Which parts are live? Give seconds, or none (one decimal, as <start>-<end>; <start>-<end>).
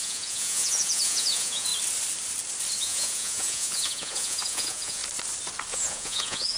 1.7-2.8; 5.0-5.7